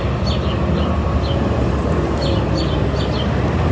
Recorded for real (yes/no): yes